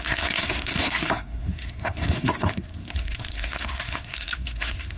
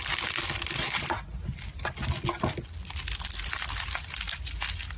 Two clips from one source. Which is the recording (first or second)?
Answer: second